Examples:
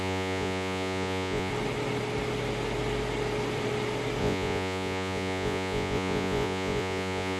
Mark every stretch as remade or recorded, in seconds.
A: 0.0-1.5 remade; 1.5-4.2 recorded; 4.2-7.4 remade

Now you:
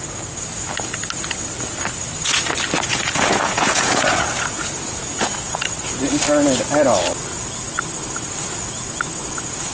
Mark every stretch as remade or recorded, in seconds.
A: 0.0-2.9 recorded; 2.9-5.7 remade; 5.7-9.7 recorded

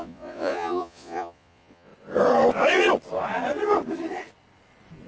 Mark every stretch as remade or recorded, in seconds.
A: 0.0-1.9 remade; 1.9-5.1 recorded

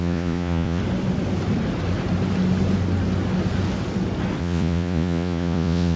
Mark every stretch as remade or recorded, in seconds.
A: 0.0-0.8 remade; 0.8-4.4 recorded; 4.4-6.0 remade

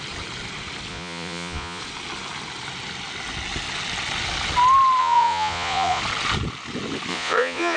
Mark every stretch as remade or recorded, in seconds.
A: 0.0-0.9 recorded; 0.9-1.8 remade; 1.8-5.0 recorded; 5.0-6.0 remade; 6.0-7.1 recorded; 7.1-7.8 remade

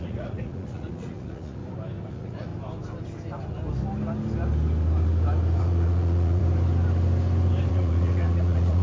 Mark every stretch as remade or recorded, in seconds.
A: 0.0-1.6 remade; 1.6-2.1 recorded; 2.1-2.5 remade; 2.5-5.6 recorded; 5.6-6.4 remade; 6.4-7.7 recorded; 7.7-8.8 remade

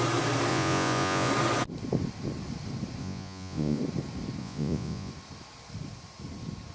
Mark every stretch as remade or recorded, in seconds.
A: 0.0-0.5 recorded; 0.5-1.3 remade; 1.3-3.0 recorded; 3.0-3.8 remade; 3.8-4.4 recorded; 4.4-5.1 remade; 5.1-6.7 recorded